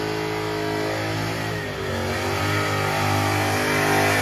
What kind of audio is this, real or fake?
real